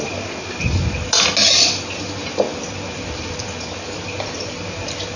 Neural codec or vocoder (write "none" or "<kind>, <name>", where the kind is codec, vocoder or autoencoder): none